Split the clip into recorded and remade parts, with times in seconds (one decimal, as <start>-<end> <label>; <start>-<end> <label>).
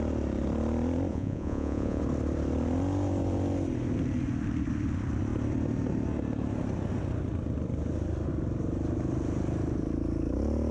0.0-1.1 recorded; 1.1-2.0 remade; 2.0-10.7 recorded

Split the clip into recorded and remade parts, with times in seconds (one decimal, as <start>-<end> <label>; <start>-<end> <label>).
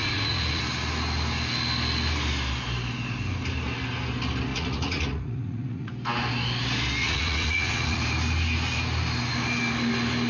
0.0-0.6 remade; 0.6-4.5 recorded; 4.5-5.9 remade; 5.9-7.0 recorded; 7.0-8.0 remade; 8.0-10.3 recorded